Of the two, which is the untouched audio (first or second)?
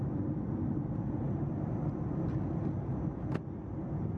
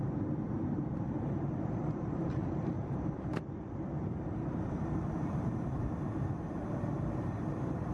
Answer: first